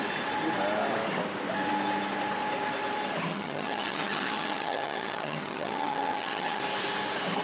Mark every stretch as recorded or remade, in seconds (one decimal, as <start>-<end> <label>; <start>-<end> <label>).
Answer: 0.0-3.3 recorded; 3.3-6.6 remade; 6.6-7.4 recorded